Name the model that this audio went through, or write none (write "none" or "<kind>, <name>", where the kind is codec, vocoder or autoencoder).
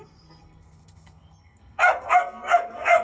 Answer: codec, SNAC